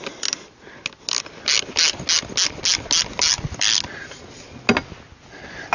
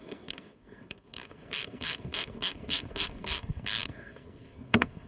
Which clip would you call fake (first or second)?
second